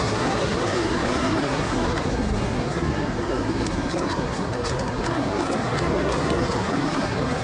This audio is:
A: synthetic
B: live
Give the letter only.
A